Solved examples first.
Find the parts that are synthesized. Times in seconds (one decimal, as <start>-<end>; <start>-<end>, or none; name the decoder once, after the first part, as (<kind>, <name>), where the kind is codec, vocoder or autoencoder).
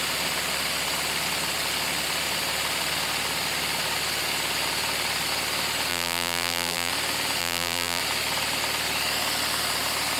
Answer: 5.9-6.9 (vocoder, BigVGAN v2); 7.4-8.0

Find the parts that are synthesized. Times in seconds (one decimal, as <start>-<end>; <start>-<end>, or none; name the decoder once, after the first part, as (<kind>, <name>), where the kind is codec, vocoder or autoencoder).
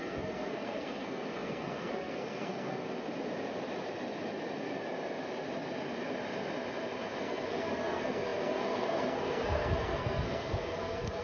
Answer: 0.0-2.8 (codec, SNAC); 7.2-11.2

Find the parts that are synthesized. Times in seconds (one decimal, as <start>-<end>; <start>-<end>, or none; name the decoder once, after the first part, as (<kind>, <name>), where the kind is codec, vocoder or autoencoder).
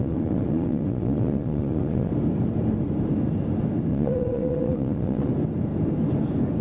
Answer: 0.0-2.1 (vocoder, Vocos); 3.9-5.3